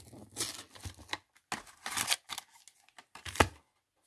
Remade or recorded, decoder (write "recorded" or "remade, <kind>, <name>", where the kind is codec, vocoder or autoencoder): recorded